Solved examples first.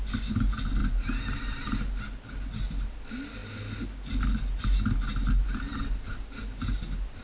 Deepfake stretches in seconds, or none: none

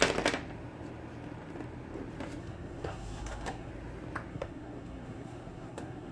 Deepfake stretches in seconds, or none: 2.4-3.7 (codec, SNAC); 4.3-6.1

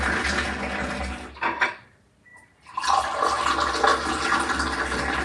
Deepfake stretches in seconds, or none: none

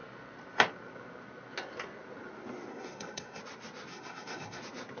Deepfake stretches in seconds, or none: 2.7-3.4 (codec, SNAC); 3.9-4.6